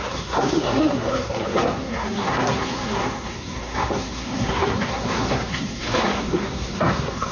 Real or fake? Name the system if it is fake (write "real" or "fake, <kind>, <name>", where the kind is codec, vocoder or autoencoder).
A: fake, codec, SNAC